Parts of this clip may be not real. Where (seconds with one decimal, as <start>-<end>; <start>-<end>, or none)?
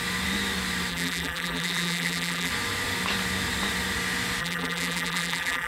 0.9-2.5; 4.4-5.7